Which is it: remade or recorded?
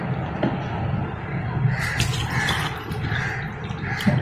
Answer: recorded